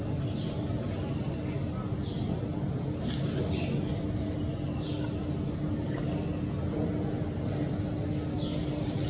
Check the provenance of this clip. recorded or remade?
recorded